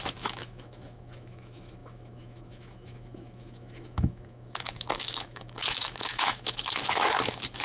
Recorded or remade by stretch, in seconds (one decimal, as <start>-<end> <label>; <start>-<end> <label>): 0.0-7.6 remade